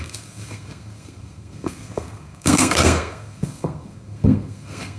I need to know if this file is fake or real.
fake